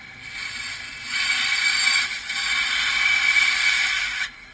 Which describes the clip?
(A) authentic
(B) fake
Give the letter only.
A